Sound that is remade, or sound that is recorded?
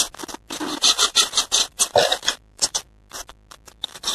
remade